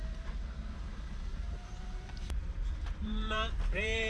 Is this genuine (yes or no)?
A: no